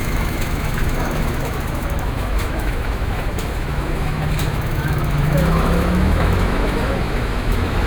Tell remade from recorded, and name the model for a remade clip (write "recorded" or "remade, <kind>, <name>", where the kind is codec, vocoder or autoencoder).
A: remade, autoencoder, DAC-VAE